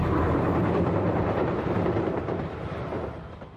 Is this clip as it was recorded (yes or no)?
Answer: no